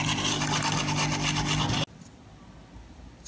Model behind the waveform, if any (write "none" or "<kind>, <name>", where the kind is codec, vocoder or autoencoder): none